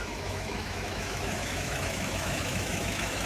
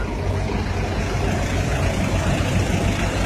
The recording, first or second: second